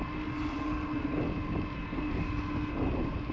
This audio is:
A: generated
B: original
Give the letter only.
B